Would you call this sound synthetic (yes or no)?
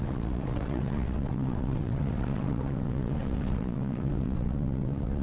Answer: yes